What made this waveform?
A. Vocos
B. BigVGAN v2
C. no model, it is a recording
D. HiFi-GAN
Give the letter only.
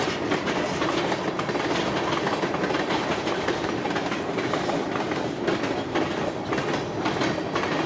C